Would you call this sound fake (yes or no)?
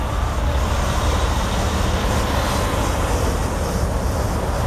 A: no